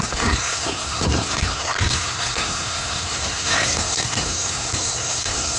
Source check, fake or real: fake